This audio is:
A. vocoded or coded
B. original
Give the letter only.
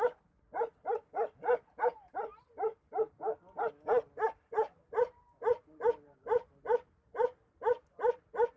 B